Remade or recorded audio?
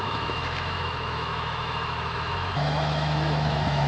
remade